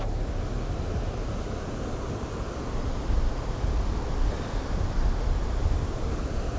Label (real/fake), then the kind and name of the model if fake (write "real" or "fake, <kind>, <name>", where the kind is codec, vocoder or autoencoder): real